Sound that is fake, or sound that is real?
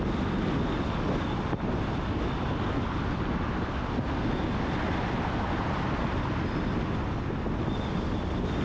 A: real